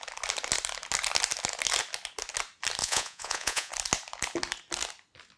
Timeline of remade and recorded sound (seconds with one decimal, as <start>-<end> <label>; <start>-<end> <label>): 0.0-2.8 recorded; 2.8-3.7 remade; 3.7-5.4 recorded